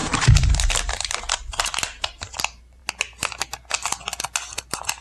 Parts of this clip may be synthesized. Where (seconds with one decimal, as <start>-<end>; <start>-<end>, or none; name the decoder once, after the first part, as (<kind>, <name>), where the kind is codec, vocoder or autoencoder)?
0.0-2.8 (vocoder, BigVGAN v2)

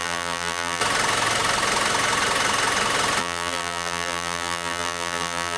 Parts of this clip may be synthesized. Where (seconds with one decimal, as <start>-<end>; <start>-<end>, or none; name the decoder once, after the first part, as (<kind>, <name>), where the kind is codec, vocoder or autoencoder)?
0.0-0.8 (vocoder, BigVGAN v2); 3.2-5.6